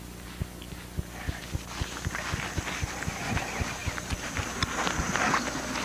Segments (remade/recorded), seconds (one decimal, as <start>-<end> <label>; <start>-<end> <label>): 0.0-5.8 recorded